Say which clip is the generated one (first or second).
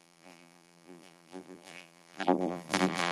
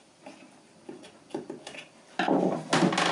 first